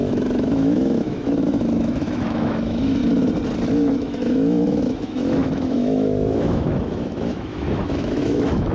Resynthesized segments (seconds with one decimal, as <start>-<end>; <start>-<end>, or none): 0.0-3.0; 4.0-8.7